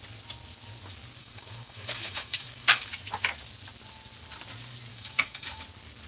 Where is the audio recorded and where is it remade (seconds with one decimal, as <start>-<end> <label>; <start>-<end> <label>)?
0.0-1.2 recorded; 1.2-2.9 remade; 2.9-4.9 recorded; 4.9-5.6 remade; 5.6-6.1 recorded